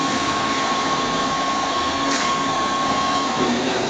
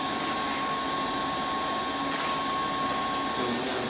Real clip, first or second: second